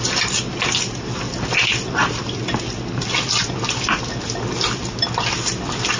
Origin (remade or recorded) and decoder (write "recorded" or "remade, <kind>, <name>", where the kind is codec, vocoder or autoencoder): recorded